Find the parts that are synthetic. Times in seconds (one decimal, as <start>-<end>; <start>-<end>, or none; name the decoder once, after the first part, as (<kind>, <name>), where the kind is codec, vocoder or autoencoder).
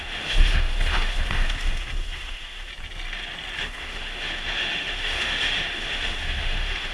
0.0-2.7 (autoencoder, DAC-VAE); 3.6-6.9